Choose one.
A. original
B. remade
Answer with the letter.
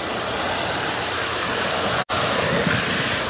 A